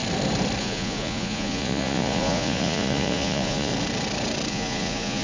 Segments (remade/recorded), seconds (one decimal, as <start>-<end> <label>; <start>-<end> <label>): 0.0-0.6 recorded; 0.6-3.7 remade; 3.7-4.5 recorded; 4.5-5.2 remade